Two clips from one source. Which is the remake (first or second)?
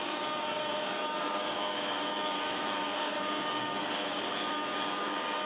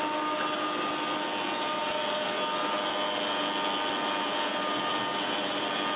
first